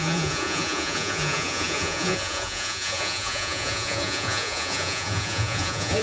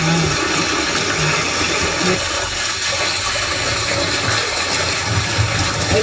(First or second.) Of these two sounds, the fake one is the first